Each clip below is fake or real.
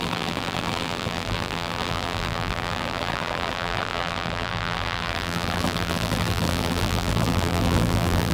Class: fake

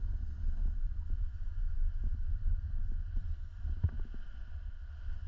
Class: real